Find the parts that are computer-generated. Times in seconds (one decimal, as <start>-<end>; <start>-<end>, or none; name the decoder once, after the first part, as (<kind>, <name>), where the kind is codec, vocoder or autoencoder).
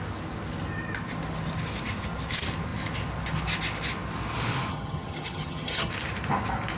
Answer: 4.7-5.9 (vocoder, HiFi-GAN)